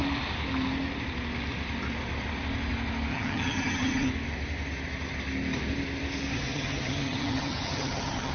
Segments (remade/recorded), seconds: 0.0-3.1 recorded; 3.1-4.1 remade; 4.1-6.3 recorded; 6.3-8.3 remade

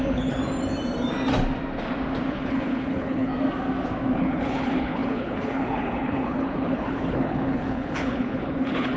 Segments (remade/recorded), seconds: 0.0-0.4 remade; 0.4-2.3 recorded; 2.3-3.3 remade; 3.3-4.1 recorded; 4.1-9.0 remade

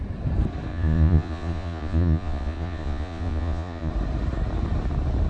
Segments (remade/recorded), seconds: 0.0-0.7 recorded; 0.7-3.9 remade; 3.9-5.3 recorded

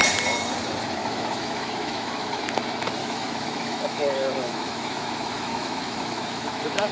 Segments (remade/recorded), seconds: 0.0-1.0 recorded; 1.0-2.4 remade; 2.4-3.0 recorded; 3.0-6.9 remade